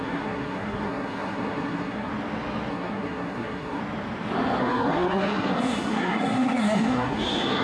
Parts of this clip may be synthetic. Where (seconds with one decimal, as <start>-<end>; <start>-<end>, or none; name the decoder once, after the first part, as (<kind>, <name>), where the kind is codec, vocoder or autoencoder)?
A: 0.0-2.1 (codec, SNAC); 2.7-3.8; 4.6-7.6